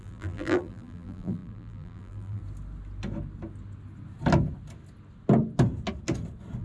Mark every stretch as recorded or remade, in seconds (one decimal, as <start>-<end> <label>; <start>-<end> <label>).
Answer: 0.0-2.4 remade; 2.4-6.6 recorded